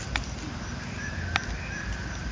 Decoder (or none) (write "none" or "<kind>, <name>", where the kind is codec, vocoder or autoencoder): none